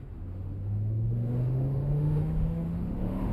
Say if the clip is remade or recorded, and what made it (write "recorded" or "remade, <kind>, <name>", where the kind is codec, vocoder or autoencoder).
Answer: remade, autoencoder, DAC-VAE